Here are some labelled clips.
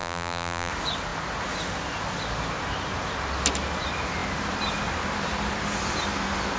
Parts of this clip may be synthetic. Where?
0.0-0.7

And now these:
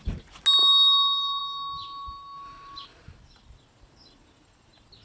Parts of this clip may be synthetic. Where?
none

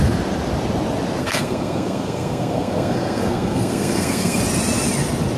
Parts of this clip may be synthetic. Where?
1.2-4.4

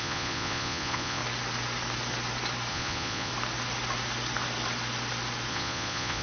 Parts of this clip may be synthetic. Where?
0.0-1.2; 2.7-3.3; 5.5-6.2